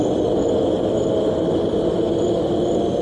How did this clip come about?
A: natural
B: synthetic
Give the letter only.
A